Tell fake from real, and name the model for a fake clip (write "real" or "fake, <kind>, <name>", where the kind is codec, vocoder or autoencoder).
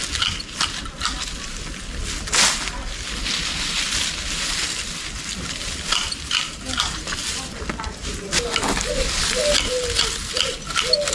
real